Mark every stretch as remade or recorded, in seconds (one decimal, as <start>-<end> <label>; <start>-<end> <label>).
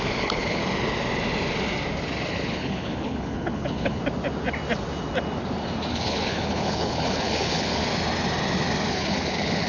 0.0-0.6 remade; 0.6-2.3 recorded; 2.3-4.0 remade; 4.0-5.9 recorded; 5.9-7.8 remade; 7.8-8.9 recorded; 8.9-9.7 remade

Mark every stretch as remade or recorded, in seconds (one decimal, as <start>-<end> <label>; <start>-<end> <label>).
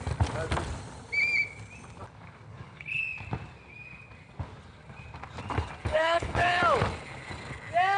0.0-2.5 recorded; 2.5-3.0 remade; 3.0-5.9 recorded; 5.9-6.6 remade; 6.6-8.0 recorded